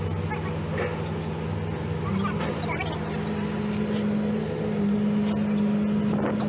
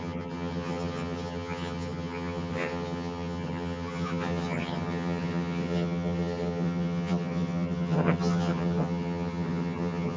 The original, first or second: first